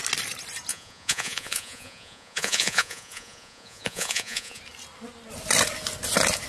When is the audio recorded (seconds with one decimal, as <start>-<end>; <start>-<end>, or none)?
0.0-0.7; 4.6-6.5